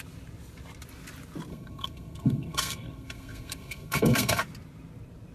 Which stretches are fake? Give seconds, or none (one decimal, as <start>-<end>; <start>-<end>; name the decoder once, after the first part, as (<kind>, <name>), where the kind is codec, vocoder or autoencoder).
1.5-4.4 (codec, SNAC)